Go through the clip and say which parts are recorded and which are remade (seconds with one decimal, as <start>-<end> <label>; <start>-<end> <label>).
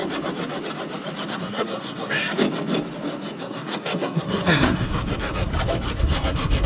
0.0-1.3 recorded; 1.3-2.2 remade; 2.2-3.4 recorded; 3.4-5.5 remade; 5.5-6.0 recorded; 6.0-6.7 remade